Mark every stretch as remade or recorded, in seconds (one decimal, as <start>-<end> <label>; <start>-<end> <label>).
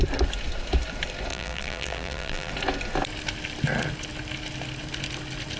0.0-1.3 recorded; 1.3-2.5 remade; 2.5-5.6 recorded